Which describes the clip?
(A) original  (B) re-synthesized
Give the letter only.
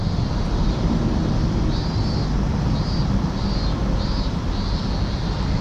A